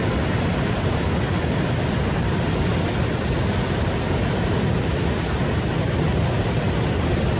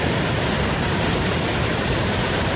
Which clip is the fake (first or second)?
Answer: second